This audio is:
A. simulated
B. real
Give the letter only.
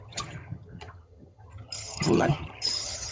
A